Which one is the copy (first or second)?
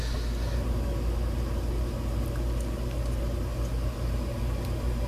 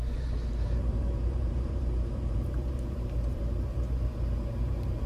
second